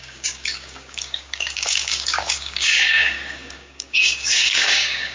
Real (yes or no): no